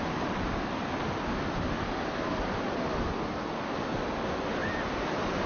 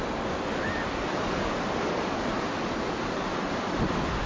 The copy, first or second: second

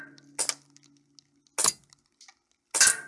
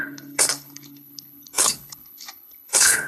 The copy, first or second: second